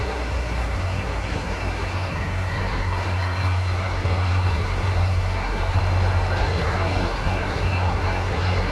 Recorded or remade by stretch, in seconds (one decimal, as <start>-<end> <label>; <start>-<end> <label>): 0.0-5.8 remade; 5.8-6.4 recorded; 6.4-8.7 remade